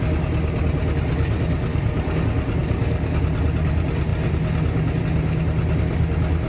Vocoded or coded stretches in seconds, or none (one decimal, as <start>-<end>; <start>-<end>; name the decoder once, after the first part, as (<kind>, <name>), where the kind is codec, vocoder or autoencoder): 1.7-2.2 (codec, DAC); 2.6-3.2